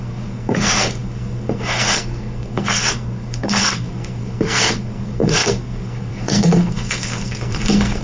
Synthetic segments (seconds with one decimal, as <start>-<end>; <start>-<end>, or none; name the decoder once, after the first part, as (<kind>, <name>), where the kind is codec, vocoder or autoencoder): 0.0-8.0 (codec, SNAC)